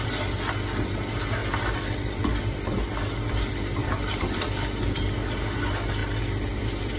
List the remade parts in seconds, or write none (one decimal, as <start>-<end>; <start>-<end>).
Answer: 1.4-2.2; 3.8-5.6; 6.0-7.0